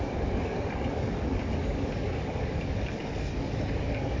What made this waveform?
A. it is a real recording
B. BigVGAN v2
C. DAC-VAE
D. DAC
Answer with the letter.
D